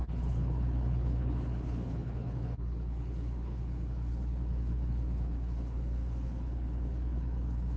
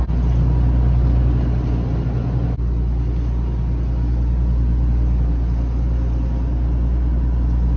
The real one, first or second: second